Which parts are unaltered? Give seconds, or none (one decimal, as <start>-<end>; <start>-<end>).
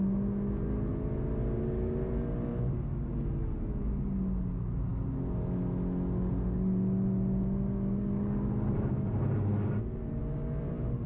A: 0.0-2.5; 3.1-11.1